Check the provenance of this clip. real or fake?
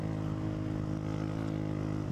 real